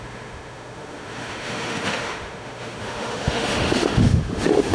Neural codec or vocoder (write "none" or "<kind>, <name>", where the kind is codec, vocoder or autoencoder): autoencoder, DAC-VAE